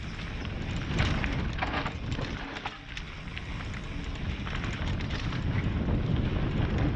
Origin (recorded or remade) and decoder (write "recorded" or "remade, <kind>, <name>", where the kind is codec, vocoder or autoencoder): recorded